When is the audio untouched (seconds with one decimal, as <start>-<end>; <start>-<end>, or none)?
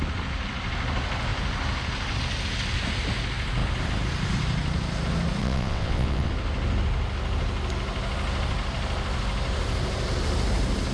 0.0-5.4; 6.3-10.9